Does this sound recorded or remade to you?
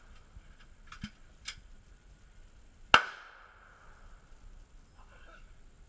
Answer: recorded